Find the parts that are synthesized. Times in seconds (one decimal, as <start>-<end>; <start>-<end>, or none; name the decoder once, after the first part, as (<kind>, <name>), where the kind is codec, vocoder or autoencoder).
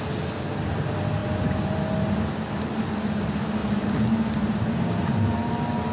3.6-5.5 (vocoder, BigVGAN v2)